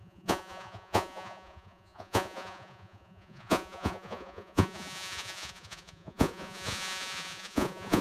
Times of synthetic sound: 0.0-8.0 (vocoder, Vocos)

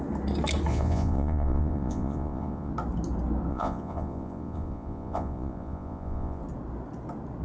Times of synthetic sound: 0.7-2.7 (vocoder, Vocos); 3.5-6.4

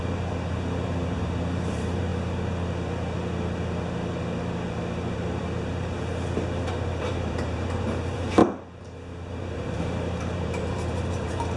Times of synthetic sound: 0.0-2.1 (vocoder, BigVGAN v2); 5.1-6.1; 6.9-8.4; 9.3-11.6